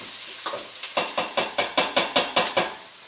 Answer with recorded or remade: recorded